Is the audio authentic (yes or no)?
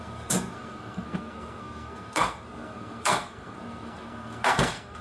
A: no